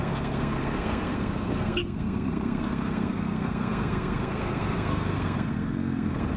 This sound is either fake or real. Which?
fake